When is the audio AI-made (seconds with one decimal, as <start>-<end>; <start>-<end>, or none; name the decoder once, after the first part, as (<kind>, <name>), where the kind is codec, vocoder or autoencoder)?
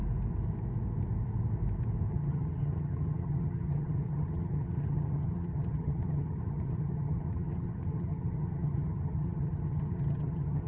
2.1-10.7 (vocoder, HiFi-GAN)